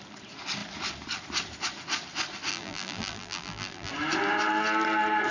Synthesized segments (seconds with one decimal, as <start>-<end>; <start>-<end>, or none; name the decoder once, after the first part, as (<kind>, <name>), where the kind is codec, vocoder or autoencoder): 2.5-3.9 (vocoder, BigVGAN v2)